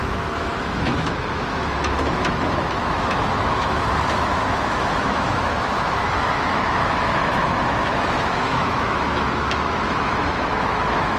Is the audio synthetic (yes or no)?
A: yes